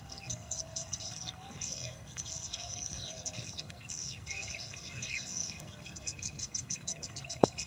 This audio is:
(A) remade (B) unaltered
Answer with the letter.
A